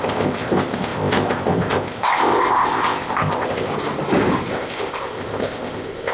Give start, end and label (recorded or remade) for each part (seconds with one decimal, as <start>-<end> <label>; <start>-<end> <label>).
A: 0.0-3.7 remade; 3.7-4.5 recorded; 4.5-6.1 remade